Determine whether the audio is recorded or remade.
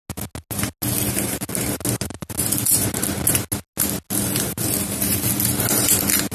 recorded